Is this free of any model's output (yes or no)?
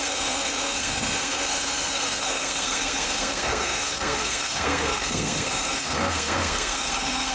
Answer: no